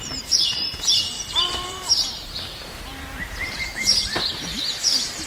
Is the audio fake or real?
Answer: fake